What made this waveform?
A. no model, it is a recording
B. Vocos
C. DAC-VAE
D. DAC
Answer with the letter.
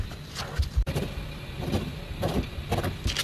A